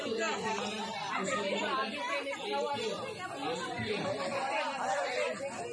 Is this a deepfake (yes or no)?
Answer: no